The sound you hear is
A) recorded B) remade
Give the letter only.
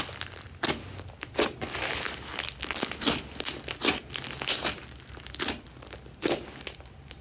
A